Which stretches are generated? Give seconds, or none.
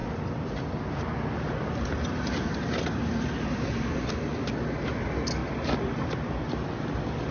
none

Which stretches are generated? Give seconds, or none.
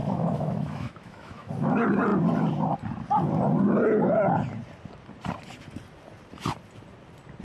0.0-1.5 (autoencoder, DAC-VAE)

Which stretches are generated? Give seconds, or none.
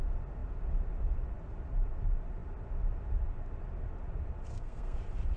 4.5-5.0 (codec, SNAC)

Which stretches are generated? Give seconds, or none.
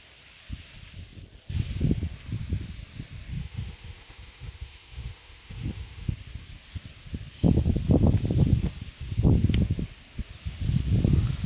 3.4-6.1 (autoencoder, DAC-VAE)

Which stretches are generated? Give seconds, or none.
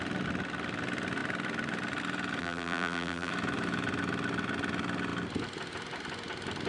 2.4-3.3 (vocoder, BigVGAN v2)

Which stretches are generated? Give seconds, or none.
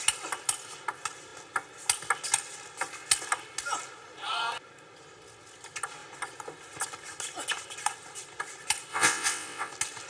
8.9-9.7 (vocoder, WaveNeXt)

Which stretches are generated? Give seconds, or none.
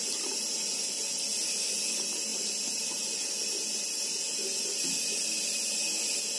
none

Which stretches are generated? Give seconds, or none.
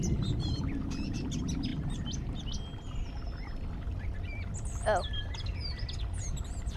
none